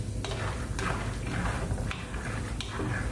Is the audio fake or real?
real